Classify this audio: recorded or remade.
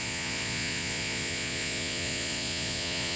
remade